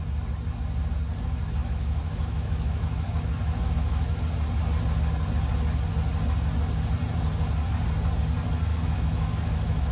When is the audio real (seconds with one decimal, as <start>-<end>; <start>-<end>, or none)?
0.0-1.6; 4.2-8.7